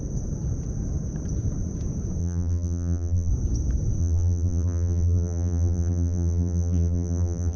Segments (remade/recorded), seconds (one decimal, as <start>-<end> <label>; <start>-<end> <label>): 0.0-2.2 recorded; 2.2-3.3 remade; 3.3-4.0 recorded; 4.0-7.6 remade